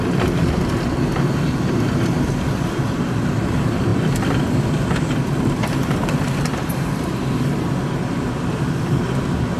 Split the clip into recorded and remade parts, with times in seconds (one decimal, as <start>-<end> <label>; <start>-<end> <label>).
0.0-3.9 recorded; 3.9-7.5 remade; 7.5-9.6 recorded